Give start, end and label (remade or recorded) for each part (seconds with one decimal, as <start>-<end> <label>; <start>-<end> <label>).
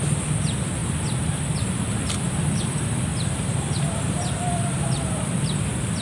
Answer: 0.0-3.1 recorded; 3.1-5.1 remade; 5.1-6.0 recorded